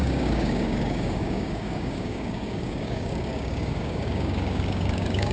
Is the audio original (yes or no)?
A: no